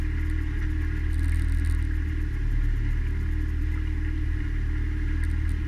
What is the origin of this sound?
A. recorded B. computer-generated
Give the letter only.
A